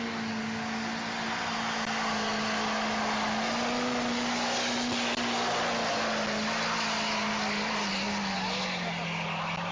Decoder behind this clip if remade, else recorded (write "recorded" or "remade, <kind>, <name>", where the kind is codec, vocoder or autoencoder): recorded